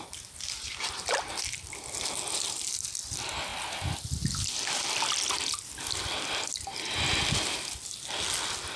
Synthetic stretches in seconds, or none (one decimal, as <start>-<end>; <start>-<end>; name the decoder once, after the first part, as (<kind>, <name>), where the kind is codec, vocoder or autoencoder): none